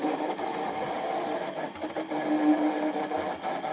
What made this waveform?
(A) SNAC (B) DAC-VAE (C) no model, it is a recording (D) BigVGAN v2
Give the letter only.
C